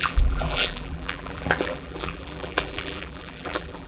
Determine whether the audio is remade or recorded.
remade